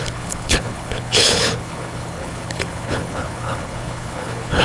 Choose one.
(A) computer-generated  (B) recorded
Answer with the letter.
A